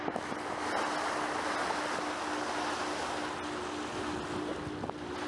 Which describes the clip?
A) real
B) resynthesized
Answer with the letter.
A